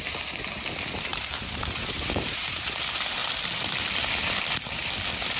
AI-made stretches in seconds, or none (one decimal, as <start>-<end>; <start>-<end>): 1.1-2.7